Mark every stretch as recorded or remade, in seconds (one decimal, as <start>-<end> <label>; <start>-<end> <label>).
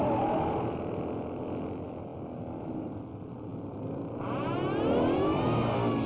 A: 0.0-6.1 recorded